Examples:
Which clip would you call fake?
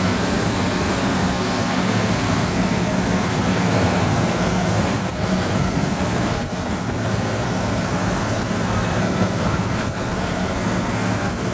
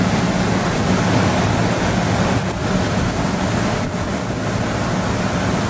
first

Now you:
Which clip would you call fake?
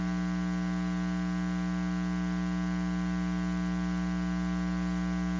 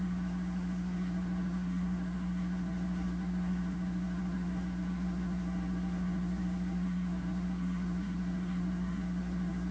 second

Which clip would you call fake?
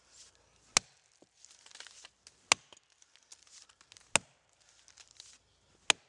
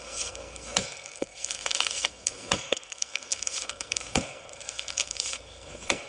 second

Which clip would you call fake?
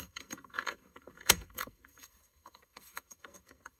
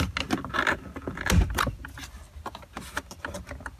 first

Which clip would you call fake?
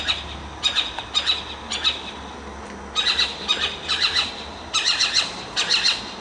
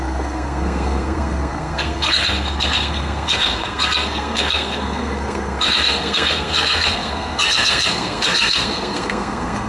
second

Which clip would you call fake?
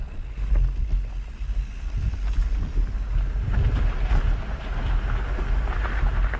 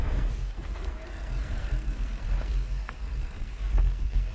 second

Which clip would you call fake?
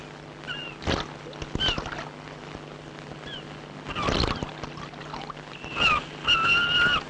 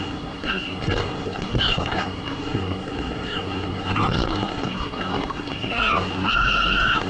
second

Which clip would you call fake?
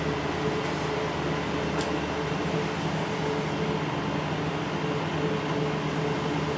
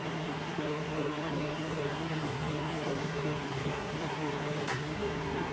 second